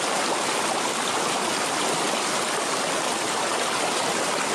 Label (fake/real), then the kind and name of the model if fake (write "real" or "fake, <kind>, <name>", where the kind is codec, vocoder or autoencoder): real